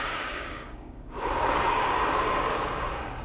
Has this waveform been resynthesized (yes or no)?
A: yes